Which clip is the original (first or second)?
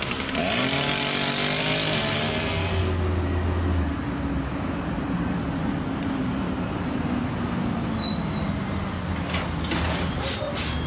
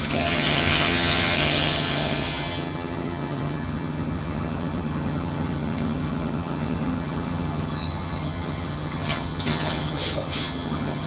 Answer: first